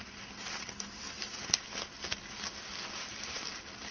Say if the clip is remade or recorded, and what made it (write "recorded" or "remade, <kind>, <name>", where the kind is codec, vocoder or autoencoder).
recorded